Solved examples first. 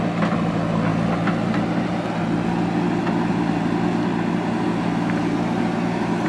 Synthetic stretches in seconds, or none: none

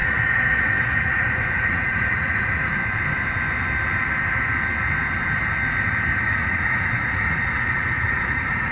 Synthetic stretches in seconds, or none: 0.0-2.8 (vocoder, Vocos); 6.3-8.7

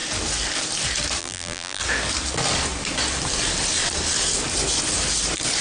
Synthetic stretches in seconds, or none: 1.2-1.8 (vocoder, BigVGAN v2)